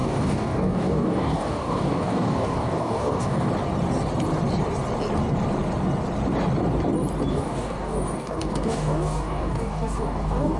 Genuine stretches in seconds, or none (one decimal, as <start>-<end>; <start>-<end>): 3.5-7.3